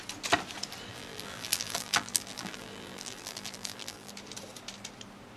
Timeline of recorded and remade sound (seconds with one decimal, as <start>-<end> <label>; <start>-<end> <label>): 0.0-0.9 recorded; 0.9-4.1 remade; 4.1-5.4 recorded